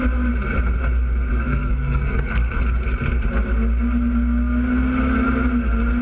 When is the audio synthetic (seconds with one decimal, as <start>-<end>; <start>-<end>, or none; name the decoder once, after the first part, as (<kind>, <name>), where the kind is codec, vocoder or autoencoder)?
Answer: 1.3-2.6 (codec, SNAC)